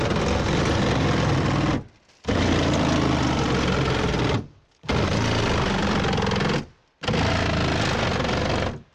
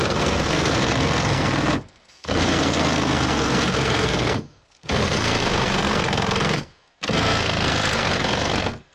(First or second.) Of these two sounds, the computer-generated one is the second